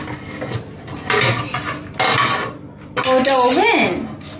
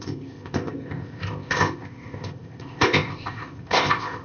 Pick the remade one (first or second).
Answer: second